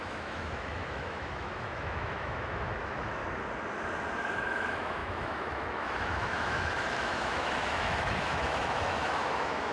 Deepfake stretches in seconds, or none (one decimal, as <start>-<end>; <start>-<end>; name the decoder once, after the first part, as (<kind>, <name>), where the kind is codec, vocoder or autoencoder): 0.0-3.2 (autoencoder, DAC-VAE); 4.2-9.7